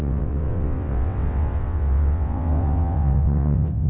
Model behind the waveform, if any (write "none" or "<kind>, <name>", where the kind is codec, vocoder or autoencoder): vocoder, WaveNeXt